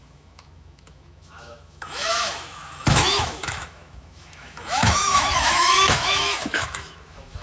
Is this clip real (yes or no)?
no